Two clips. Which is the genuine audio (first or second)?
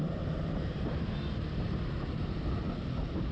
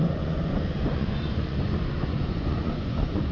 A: first